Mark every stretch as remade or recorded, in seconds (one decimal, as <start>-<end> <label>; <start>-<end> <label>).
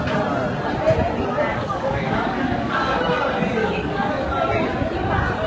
0.0-1.5 recorded; 1.5-3.0 remade; 3.0-3.6 recorded; 3.6-4.3 remade; 4.3-5.5 recorded